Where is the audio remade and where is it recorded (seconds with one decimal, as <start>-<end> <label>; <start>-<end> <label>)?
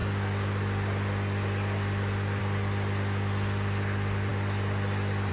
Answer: 0.0-5.3 recorded